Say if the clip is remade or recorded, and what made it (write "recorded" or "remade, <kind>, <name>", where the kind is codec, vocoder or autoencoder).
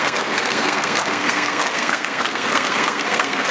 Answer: remade, codec, SNAC